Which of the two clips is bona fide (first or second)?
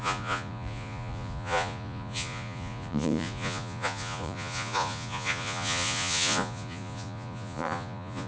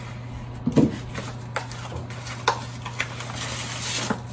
second